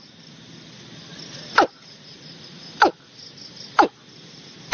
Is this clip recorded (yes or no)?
yes